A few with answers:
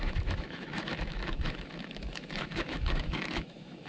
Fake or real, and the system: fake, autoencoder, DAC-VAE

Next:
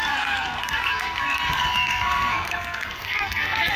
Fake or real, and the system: fake, codec, SNAC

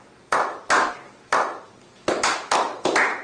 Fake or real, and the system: real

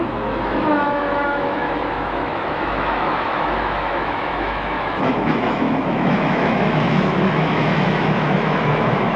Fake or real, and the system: fake, autoencoder, DAC-VAE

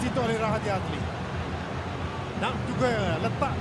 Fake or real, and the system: real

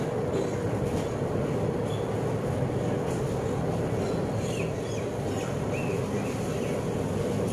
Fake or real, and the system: real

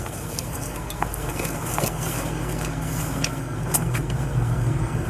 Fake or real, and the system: fake, codec, SNAC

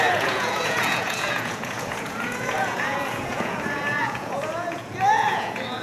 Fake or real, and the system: fake, vocoder, Vocos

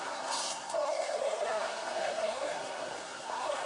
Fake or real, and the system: fake, codec, SNAC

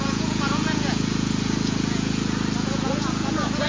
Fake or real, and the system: fake, vocoder, Vocos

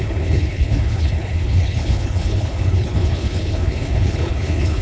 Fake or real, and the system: fake, codec, HILCodec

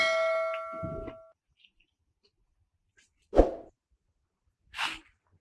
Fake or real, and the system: real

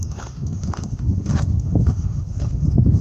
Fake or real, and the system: fake, autoencoder, DAC-VAE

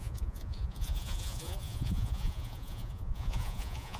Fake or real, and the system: fake, vocoder, Vocos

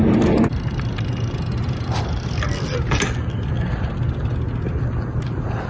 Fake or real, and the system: real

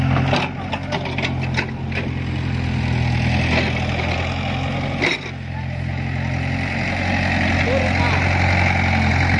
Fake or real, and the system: real